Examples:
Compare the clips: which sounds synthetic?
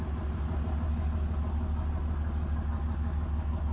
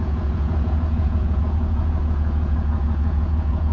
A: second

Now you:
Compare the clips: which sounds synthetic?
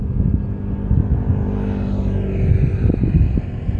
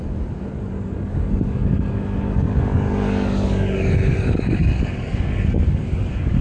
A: second